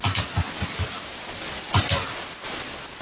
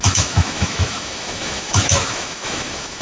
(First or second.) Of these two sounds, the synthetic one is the second